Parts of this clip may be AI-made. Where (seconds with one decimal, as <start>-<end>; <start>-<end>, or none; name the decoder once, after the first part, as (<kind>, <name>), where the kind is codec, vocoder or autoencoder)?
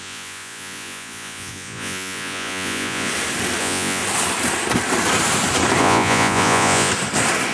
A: 0.0-3.1 (vocoder, Vocos); 3.6-4.0; 5.8-6.9